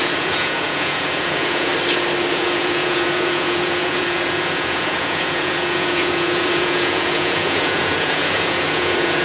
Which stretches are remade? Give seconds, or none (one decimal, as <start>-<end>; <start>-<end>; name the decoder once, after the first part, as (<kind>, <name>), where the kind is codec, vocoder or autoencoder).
0.0-1.7 (vocoder, Vocos); 2.3-9.2